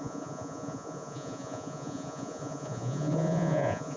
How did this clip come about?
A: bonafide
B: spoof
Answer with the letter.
B